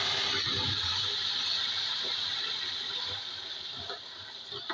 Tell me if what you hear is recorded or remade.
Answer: recorded